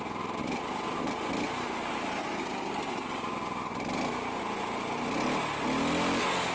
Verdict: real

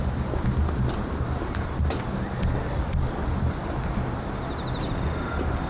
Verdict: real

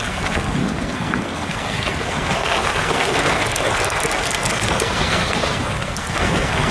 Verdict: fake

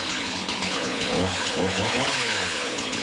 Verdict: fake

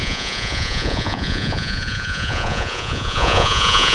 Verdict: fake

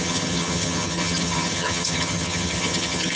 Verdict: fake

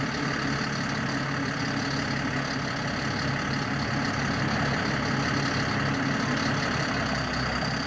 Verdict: real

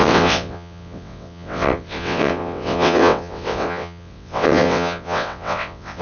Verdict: fake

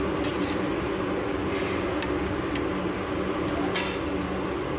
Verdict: real